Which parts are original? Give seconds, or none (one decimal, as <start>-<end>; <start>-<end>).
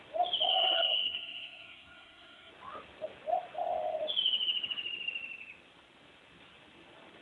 0.0-0.5; 2.5-7.2